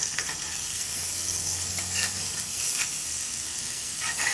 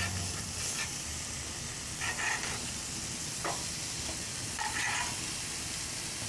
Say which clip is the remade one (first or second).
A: first